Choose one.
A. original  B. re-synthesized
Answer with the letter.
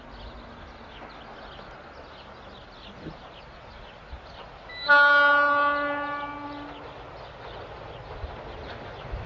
A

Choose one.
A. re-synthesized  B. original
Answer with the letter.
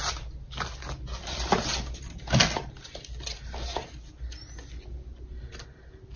B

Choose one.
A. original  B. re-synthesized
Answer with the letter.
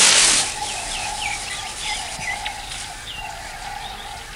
A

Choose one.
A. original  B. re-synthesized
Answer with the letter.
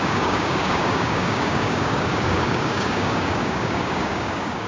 B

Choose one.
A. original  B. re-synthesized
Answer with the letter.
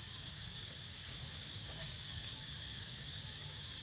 B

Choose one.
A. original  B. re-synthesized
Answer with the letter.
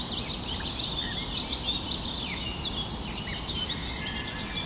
A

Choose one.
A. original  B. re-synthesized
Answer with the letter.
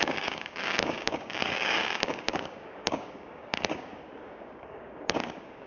B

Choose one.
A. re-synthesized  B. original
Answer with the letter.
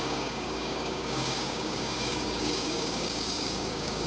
A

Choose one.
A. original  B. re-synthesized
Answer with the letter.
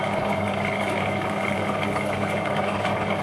B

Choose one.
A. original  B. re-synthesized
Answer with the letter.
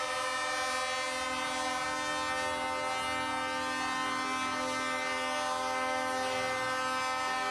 A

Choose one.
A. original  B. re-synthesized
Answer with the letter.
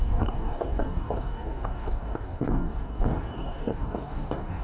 B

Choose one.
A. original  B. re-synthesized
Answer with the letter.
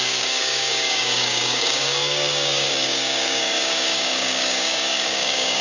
B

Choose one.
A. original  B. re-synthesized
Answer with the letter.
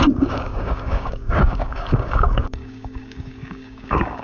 B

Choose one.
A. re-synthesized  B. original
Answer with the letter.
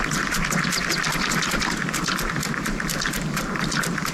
B